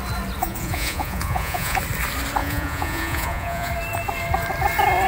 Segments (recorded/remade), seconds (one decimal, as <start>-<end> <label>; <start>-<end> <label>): 0.0-0.4 recorded; 0.4-1.8 remade; 1.8-2.4 recorded; 2.4-3.7 remade; 3.7-5.1 recorded